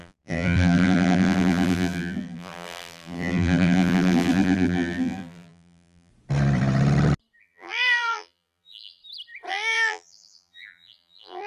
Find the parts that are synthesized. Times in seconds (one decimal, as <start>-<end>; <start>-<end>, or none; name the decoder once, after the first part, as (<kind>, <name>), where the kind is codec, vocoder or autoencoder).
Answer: 0.0-6.1 (vocoder, BigVGAN v2); 7.4-9.0; 9.5-11.5